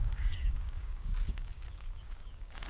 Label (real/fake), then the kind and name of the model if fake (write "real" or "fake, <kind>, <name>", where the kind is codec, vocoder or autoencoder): fake, codec, DAC